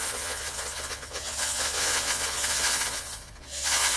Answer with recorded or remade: remade